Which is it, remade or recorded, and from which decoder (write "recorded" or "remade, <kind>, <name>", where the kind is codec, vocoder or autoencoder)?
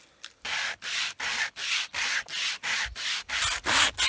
recorded